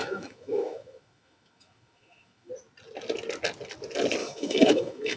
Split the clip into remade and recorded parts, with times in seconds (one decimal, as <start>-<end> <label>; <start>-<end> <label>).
0.0-2.5 remade; 2.5-4.2 recorded; 4.2-5.2 remade